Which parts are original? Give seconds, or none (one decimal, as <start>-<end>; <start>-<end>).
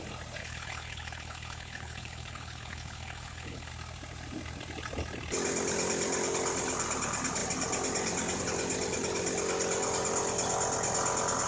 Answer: 0.0-0.4; 3.7-11.5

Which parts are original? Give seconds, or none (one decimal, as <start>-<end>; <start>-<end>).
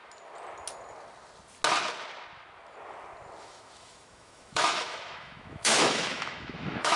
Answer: 0.0-3.4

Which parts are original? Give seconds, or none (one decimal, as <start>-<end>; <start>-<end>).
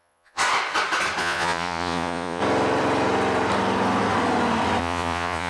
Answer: 0.4-1.2; 2.4-4.8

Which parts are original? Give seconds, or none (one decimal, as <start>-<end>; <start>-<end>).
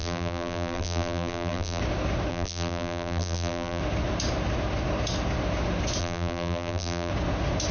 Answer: 1.8-2.3; 3.8-6.0; 7.1-7.7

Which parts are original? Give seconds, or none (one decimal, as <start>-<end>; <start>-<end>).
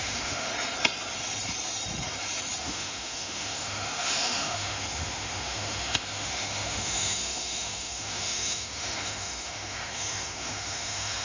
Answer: 0.5-2.6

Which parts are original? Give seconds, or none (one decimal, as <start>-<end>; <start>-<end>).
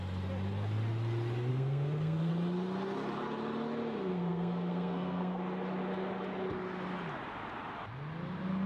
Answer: 0.0-1.5; 2.3-4.1; 5.4-8.7